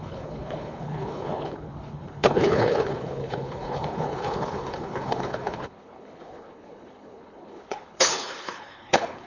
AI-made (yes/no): yes